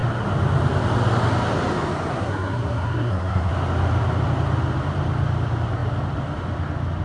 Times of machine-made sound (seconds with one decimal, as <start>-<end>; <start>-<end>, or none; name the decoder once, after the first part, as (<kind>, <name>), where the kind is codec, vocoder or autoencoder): 2.1-3.5 (codec, SNAC)